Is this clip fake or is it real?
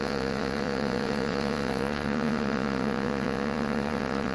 fake